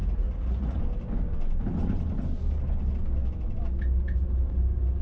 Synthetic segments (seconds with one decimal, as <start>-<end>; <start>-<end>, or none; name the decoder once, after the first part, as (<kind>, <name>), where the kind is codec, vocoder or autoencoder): 0.0-0.8 (vocoder, Vocos)